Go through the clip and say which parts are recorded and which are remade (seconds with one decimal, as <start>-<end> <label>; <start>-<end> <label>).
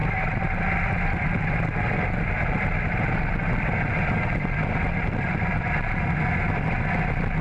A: 0.0-7.4 recorded